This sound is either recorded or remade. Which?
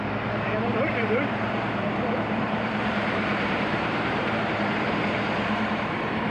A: remade